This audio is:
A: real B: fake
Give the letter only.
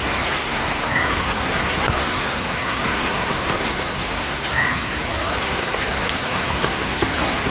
B